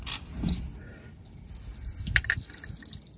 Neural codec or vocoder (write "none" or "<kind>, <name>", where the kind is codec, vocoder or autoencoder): none